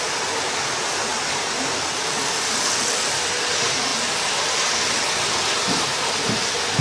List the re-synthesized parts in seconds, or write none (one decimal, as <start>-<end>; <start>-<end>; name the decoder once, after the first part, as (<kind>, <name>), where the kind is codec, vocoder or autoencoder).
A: none